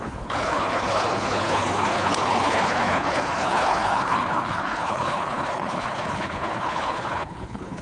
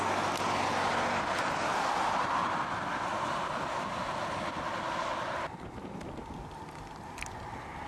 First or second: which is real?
second